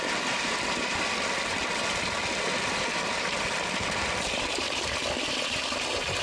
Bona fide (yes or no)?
no